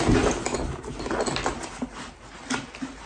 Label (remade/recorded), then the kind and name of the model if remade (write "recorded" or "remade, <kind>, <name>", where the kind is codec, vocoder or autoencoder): recorded